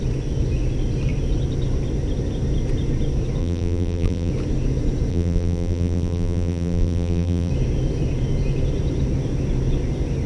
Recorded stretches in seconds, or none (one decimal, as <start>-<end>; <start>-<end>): 0.0-3.4; 4.3-5.1; 7.5-10.3